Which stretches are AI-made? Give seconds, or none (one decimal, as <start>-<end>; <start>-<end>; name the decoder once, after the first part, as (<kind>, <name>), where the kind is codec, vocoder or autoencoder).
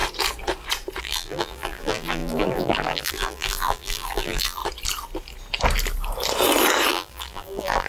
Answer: 1.0-4.6 (vocoder, BigVGAN v2); 6.9-7.9